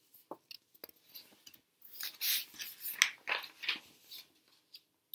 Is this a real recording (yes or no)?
yes